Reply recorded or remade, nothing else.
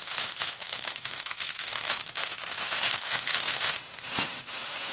remade